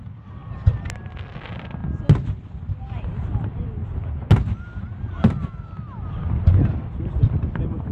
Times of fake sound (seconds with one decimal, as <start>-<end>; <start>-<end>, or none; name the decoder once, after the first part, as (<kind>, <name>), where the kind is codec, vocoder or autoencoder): none